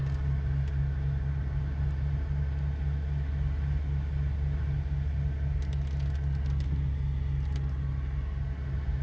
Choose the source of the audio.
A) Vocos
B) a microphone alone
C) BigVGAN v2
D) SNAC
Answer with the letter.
B